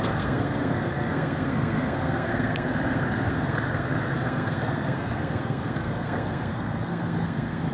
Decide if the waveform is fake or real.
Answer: fake